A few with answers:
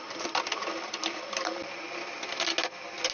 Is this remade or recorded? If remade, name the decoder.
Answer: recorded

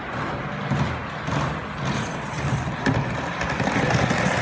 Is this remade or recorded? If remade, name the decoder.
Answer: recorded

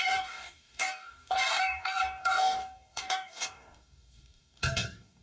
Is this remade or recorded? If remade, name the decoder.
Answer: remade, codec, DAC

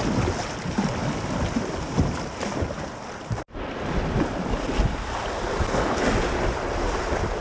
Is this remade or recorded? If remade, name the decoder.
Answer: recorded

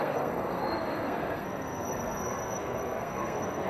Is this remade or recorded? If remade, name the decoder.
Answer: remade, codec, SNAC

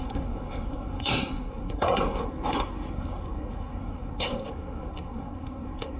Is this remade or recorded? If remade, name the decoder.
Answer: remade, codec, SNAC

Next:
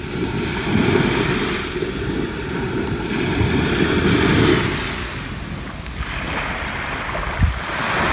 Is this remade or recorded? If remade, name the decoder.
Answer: recorded